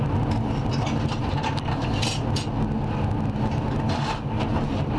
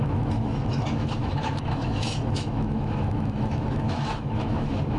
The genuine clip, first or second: first